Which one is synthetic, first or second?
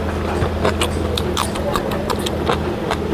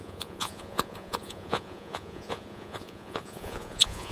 second